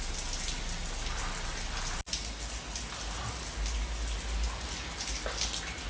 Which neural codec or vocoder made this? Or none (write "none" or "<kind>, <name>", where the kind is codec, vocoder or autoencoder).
none